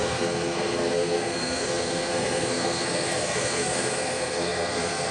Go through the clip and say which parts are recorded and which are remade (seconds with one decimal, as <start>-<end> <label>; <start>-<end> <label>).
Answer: 0.0-5.1 remade